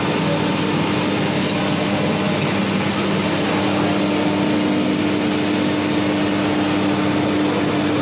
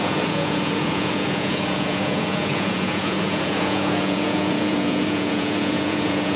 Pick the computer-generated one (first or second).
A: second